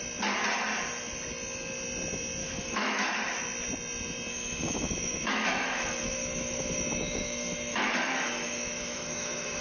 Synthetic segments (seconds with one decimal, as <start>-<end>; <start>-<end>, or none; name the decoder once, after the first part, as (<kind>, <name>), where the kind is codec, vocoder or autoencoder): 2.4-3.1 (autoencoder, DAC-VAE); 4.3-9.6